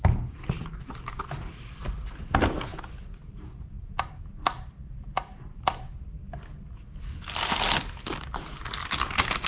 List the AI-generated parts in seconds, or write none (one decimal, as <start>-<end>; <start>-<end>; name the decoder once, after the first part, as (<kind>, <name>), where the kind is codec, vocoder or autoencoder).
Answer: none